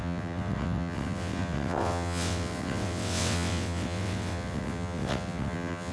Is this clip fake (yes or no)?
yes